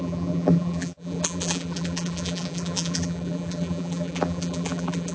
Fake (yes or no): yes